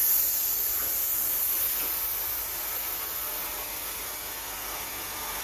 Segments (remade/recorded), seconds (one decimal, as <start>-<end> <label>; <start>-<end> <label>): 0.0-5.4 recorded